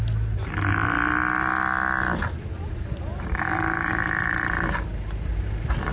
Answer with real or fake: real